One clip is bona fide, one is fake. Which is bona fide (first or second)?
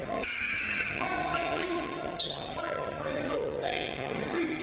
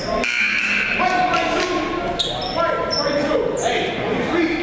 second